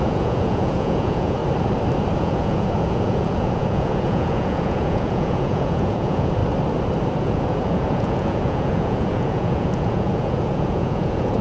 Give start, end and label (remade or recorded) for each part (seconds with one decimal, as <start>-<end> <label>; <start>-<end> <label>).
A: 0.0-1.4 remade; 1.4-2.2 recorded; 2.2-6.4 remade; 6.4-7.2 recorded; 7.2-11.4 remade